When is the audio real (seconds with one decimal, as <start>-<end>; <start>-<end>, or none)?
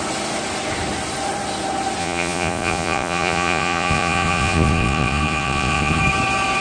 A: 0.0-2.0; 6.0-6.6